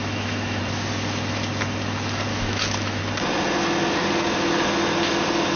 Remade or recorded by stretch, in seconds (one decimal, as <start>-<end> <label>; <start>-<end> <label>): 0.0-0.6 remade; 0.6-2.3 recorded; 2.3-3.0 remade; 3.0-5.6 recorded